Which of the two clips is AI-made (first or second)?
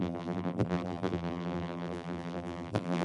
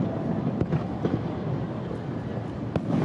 first